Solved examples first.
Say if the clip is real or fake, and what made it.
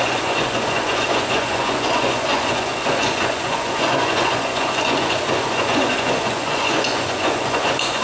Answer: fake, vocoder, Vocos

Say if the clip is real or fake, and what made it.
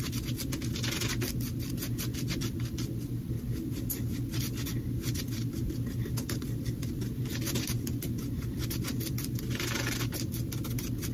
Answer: real